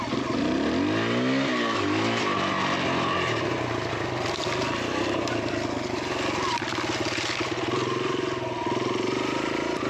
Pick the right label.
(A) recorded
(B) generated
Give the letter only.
A